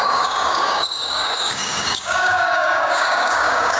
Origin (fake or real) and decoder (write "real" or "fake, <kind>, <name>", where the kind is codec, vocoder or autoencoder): fake, codec, DAC